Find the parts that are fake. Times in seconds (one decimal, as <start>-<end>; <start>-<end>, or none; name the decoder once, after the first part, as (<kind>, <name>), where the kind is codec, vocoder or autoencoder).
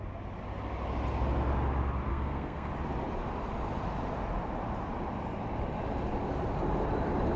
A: 2.1-2.7 (codec, SNAC)